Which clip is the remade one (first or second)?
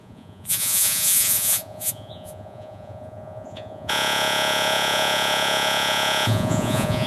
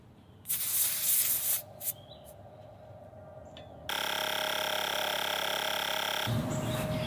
first